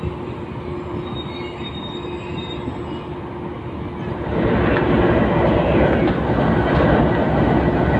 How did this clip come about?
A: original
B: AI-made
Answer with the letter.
A